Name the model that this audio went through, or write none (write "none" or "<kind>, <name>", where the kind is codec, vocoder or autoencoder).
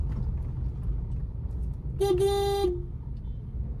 none